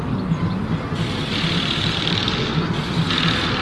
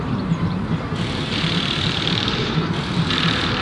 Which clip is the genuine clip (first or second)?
first